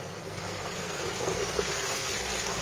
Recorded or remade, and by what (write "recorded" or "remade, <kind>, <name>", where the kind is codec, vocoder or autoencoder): remade, codec, SNAC